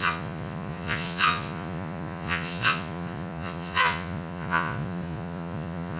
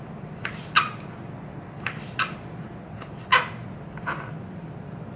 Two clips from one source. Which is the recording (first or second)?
second